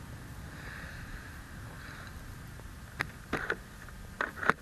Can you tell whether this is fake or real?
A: real